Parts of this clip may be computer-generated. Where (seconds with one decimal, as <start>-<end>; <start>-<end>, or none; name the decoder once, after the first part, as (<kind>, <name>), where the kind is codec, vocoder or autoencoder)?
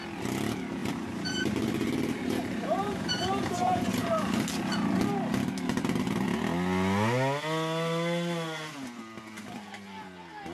0.8-4.0 (vocoder, BigVGAN v2)